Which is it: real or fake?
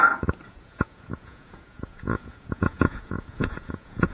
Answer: fake